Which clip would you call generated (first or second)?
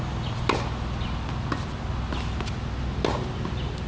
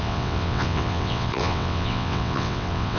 second